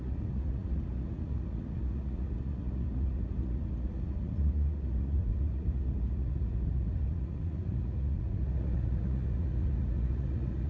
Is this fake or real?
fake